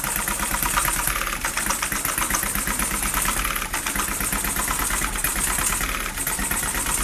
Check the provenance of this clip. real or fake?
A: real